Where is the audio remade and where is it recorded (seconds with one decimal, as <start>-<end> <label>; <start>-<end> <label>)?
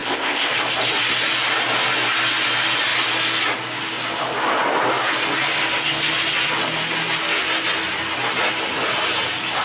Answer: 0.0-0.5 remade; 0.5-9.6 recorded